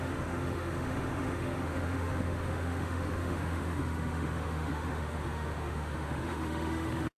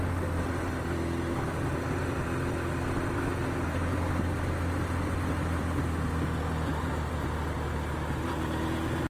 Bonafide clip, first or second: second